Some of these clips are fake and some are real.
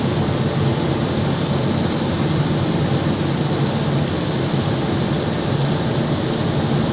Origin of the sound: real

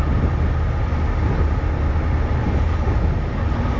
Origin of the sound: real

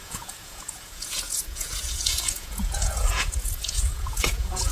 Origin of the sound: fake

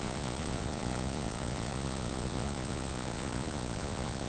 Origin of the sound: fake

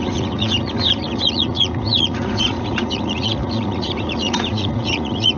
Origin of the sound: fake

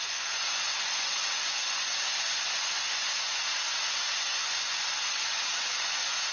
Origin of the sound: fake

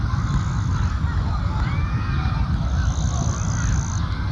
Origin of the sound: real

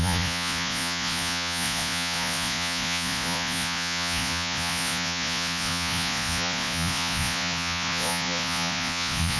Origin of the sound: fake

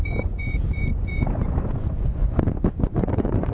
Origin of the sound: fake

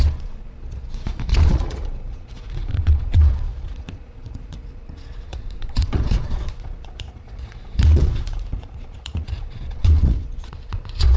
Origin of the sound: fake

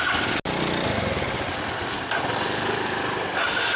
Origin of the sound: real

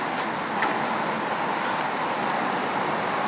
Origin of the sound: real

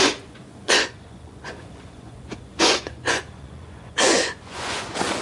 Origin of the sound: fake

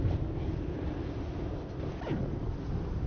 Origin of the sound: real